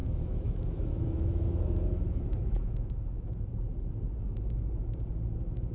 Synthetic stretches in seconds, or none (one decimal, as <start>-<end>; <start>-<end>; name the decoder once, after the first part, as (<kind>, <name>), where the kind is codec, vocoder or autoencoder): 0.0-3.4 (autoencoder, DAC-VAE)